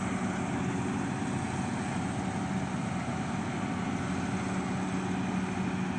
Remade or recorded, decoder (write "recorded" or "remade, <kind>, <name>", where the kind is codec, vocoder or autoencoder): recorded